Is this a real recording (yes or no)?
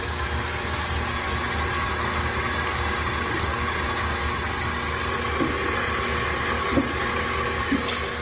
yes